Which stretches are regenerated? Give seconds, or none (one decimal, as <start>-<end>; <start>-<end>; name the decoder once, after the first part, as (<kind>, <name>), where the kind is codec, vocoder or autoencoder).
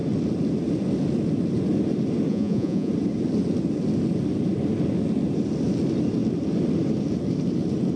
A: 2.3-2.9 (vocoder, Vocos)